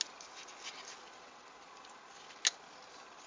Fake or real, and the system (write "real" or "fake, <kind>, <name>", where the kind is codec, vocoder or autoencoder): real